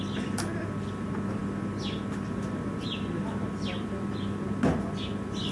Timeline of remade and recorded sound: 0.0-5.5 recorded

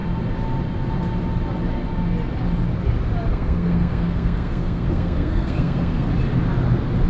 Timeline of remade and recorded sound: 0.0-3.3 recorded; 3.3-6.1 remade; 6.1-7.1 recorded

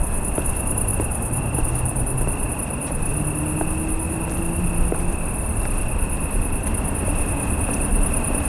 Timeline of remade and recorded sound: 0.0-0.9 recorded; 0.9-2.5 remade; 2.5-8.5 recorded

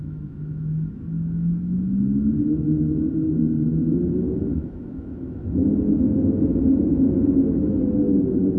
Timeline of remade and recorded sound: 0.0-8.6 remade

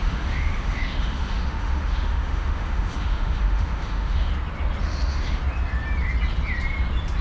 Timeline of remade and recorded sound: 0.0-4.3 remade; 4.3-4.8 recorded; 4.8-5.4 remade; 5.4-7.2 recorded

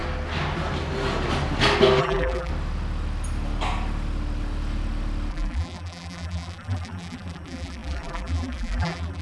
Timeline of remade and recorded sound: 0.0-2.0 recorded; 2.0-2.5 remade; 2.5-5.3 recorded; 5.3-9.2 remade